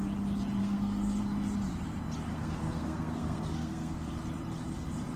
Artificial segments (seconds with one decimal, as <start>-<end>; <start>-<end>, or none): 0.6-1.2; 2.3-4.1